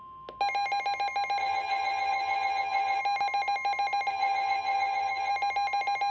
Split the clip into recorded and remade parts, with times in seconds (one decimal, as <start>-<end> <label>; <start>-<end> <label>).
0.0-1.4 recorded; 1.4-3.0 remade; 3.0-4.1 recorded; 4.1-5.3 remade; 5.3-6.1 recorded